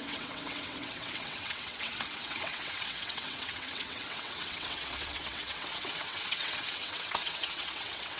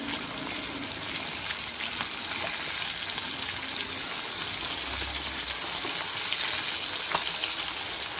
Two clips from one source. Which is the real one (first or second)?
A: second